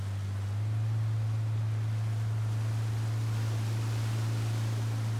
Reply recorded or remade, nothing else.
recorded